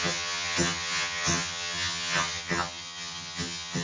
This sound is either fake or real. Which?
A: fake